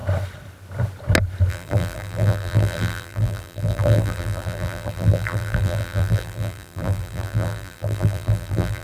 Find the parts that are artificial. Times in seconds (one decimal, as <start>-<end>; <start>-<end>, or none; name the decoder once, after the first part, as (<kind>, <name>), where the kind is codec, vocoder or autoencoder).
1.5-8.8 (vocoder, BigVGAN v2)